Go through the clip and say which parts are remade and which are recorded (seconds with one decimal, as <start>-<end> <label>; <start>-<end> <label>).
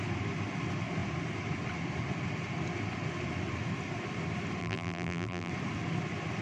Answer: 0.0-4.6 recorded; 4.6-5.5 remade; 5.5-6.4 recorded